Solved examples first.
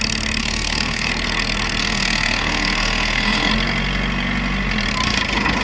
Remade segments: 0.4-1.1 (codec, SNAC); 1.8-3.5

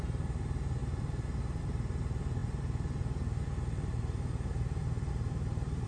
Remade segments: none

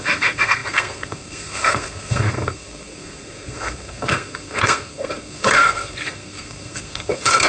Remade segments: 0.0-7.5 (codec, SNAC)

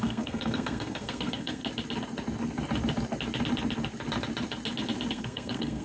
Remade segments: 0.0-1.6 (codec, SNAC); 5.1-5.8